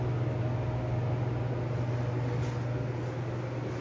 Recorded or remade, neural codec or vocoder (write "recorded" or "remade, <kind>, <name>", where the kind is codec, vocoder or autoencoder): recorded